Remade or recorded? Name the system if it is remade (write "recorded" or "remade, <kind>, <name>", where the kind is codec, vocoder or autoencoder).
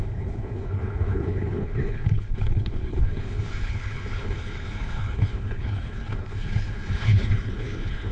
remade, codec, HILCodec